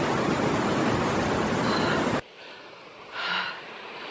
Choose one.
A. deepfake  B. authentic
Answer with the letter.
B